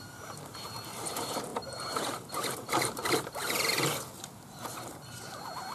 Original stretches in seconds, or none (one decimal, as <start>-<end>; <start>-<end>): 3.4-4.3